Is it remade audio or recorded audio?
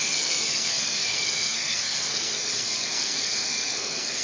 remade